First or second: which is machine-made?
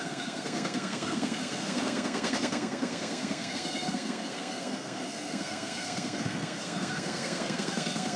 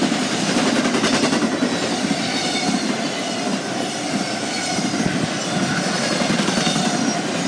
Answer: first